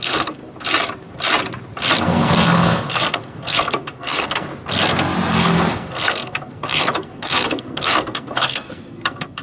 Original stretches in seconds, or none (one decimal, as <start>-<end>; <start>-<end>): 0.4-2.0; 4.5-5.3